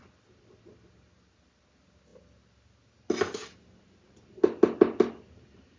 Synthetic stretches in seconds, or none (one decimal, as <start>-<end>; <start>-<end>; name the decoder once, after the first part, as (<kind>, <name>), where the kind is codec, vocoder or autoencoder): none